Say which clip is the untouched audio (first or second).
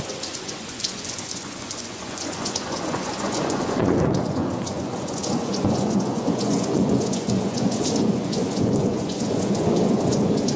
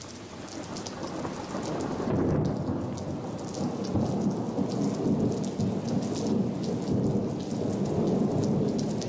second